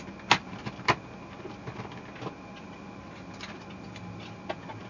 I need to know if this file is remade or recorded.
recorded